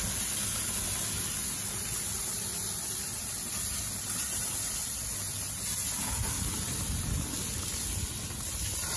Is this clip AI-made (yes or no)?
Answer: no